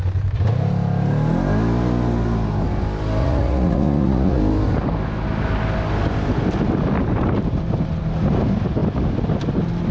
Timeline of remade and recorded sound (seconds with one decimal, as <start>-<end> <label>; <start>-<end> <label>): 0.0-3.2 recorded; 3.2-4.4 remade; 4.4-9.9 recorded